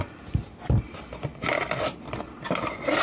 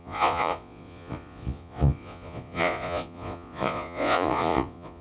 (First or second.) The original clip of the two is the first